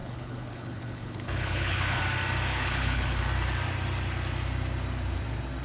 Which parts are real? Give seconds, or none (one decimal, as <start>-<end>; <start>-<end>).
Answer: 2.0-2.5; 3.2-5.6